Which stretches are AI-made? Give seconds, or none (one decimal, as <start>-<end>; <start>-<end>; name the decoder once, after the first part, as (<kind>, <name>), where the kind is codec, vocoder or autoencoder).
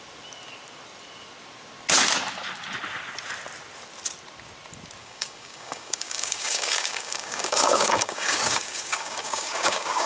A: 5.0-10.1 (codec, DAC)